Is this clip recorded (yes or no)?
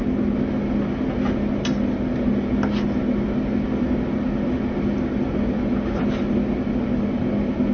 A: yes